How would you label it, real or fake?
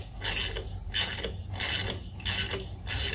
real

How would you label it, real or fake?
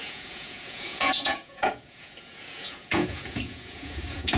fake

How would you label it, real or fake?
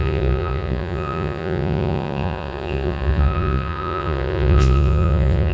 fake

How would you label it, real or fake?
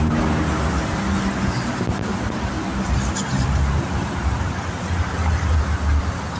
real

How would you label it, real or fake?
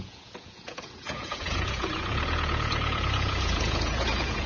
fake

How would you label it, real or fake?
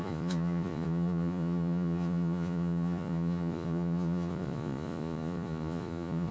fake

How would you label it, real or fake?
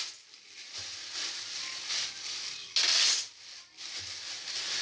real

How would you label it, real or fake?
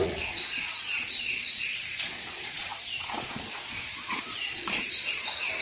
fake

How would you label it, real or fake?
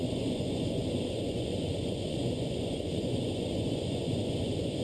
fake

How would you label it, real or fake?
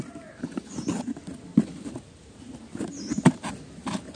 real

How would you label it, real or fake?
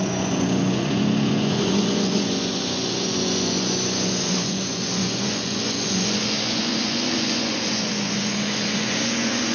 fake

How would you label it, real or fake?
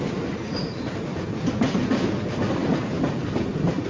real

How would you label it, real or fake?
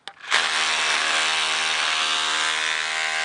real